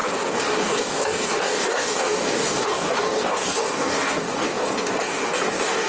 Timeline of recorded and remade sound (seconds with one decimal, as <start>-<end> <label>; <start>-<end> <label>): 0.0-5.9 remade